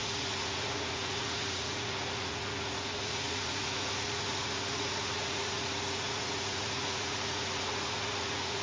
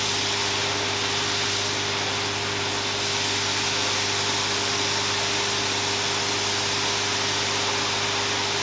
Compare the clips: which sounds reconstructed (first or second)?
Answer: first